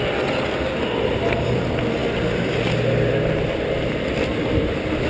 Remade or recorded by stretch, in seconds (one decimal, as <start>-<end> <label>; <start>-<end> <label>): 0.0-2.0 remade; 2.0-3.4 recorded; 3.4-5.1 remade